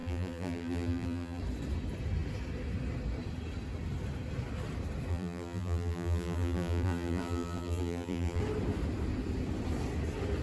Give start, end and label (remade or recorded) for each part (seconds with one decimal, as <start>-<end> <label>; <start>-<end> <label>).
0.0-1.4 remade; 1.4-5.1 recorded; 5.1-8.4 remade; 8.4-10.4 recorded